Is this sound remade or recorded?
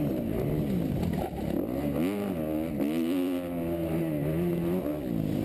recorded